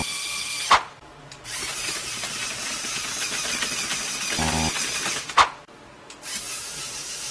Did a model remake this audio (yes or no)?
no